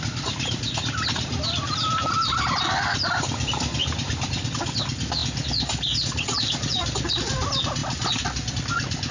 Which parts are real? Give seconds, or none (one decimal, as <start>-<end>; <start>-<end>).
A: 0.0-9.1